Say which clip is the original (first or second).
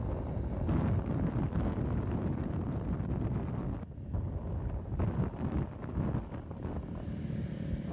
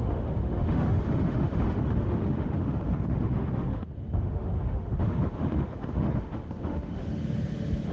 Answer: first